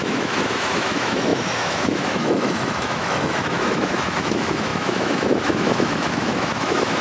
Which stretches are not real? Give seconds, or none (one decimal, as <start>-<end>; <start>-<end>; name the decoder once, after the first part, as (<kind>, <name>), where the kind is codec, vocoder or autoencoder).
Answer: 0.0-7.0 (autoencoder, DAC-VAE)

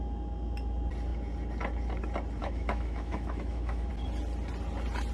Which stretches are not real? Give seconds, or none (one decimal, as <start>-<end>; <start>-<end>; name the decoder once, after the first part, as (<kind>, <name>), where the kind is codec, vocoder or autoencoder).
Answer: 2.4-3.9 (autoencoder, DAC-VAE)

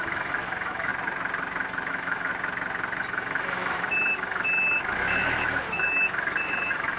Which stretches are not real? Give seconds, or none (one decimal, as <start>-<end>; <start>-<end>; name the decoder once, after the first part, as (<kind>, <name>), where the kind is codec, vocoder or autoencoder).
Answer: 0.0-0.9 (autoencoder, DAC-VAE); 1.9-2.3; 3.0-7.0

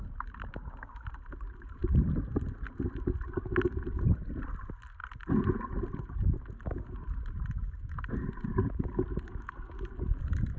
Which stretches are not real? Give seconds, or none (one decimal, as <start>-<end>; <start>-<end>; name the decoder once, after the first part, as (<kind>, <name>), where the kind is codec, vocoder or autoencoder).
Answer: none